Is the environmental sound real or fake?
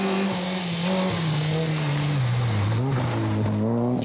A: real